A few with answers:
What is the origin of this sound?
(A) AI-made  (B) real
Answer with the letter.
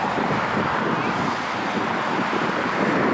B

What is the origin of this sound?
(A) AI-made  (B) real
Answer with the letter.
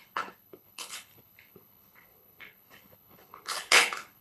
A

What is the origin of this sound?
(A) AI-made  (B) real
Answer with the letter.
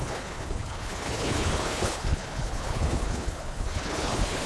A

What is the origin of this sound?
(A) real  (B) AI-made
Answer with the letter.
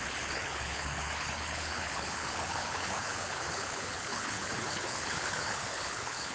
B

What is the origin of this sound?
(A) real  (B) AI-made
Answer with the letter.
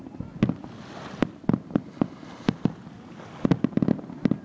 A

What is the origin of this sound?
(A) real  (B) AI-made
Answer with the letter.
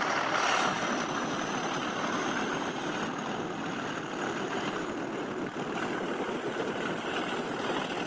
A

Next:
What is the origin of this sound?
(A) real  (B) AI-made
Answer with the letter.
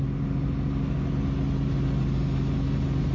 A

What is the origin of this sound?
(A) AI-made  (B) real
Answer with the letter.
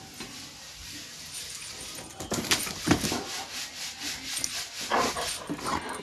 B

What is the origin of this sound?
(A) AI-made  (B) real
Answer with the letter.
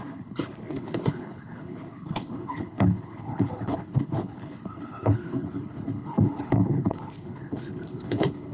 A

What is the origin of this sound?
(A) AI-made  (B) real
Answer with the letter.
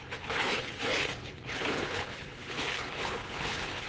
A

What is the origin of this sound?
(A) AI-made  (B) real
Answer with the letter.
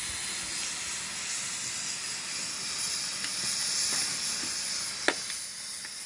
B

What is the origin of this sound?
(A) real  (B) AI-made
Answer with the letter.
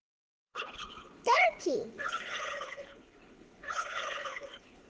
B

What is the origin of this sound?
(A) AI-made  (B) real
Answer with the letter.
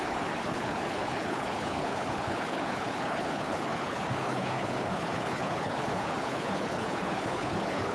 A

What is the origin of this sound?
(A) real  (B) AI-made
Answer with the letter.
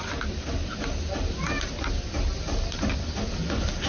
A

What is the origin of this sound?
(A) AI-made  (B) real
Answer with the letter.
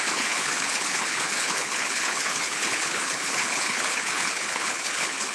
A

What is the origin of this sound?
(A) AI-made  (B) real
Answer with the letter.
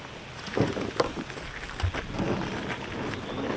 B